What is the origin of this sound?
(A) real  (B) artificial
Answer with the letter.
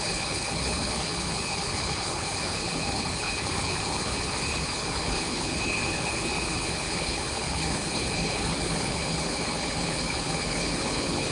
B